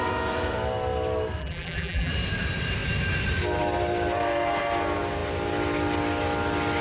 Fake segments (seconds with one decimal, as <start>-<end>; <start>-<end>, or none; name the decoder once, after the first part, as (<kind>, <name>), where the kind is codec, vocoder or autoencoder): 1.4-2.1 (vocoder, BigVGAN v2)